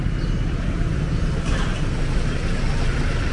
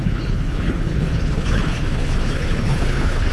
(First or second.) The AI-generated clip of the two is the second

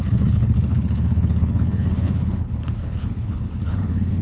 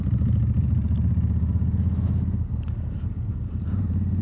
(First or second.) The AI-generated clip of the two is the first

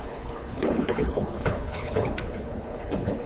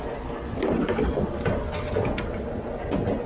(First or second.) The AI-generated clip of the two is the first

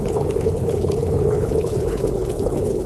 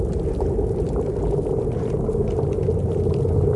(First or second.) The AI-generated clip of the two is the first